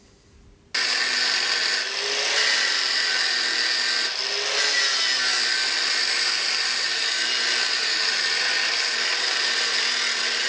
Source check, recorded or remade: recorded